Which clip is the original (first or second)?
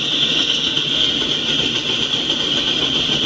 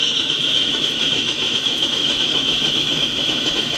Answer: first